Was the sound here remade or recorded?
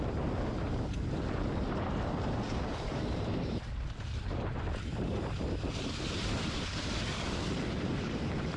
remade